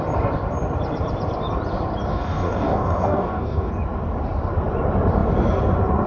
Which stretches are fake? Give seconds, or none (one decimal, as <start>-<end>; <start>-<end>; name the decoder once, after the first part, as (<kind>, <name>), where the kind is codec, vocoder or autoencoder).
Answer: 2.1-3.7 (codec, DAC)